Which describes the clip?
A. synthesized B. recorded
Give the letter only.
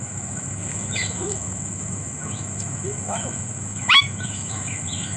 A